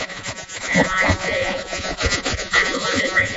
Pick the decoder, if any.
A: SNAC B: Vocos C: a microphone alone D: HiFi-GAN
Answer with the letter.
B